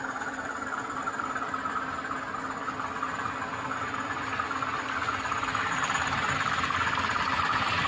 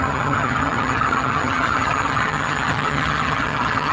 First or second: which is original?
first